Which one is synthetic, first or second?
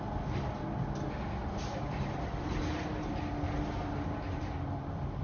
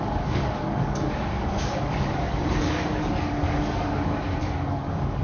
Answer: second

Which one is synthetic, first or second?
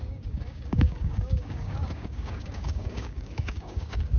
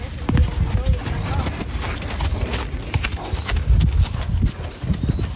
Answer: first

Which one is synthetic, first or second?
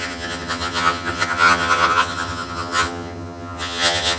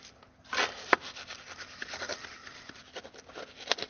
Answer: first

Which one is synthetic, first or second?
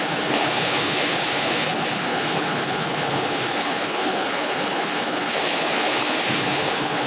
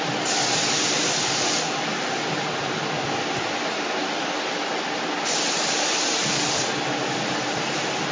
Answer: first